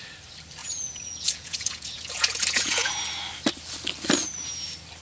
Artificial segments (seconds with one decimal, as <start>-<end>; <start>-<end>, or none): 0.6-2.9